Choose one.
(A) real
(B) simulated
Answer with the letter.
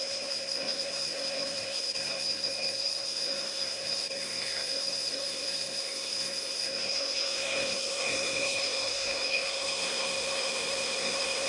B